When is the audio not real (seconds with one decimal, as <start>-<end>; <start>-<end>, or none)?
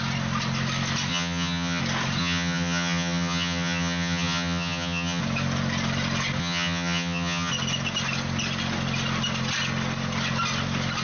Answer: 1.1-1.8; 2.2-5.2; 6.4-7.5